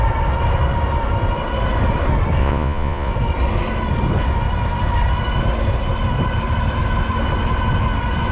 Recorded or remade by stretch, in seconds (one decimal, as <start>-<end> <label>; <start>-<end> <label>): 0.0-2.4 recorded; 2.4-3.1 remade; 3.1-8.3 recorded